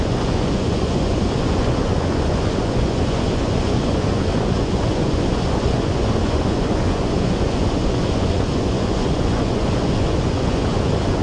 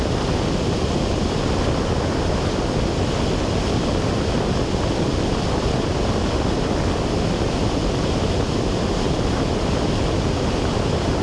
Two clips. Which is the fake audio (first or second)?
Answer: first